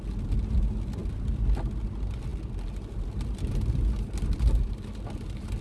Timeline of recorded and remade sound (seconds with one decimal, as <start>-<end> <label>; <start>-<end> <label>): 0.0-5.6 recorded